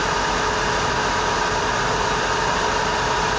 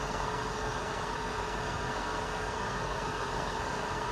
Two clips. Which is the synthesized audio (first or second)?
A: second